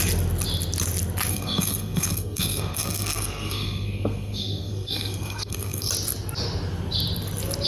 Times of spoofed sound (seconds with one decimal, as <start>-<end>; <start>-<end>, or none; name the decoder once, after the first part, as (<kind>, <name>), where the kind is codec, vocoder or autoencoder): 1.3-5.9 (codec, SNAC)